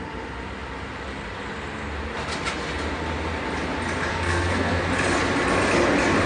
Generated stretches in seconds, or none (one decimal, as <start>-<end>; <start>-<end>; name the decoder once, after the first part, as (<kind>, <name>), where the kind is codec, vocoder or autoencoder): 4.1-4.8 (codec, SNAC)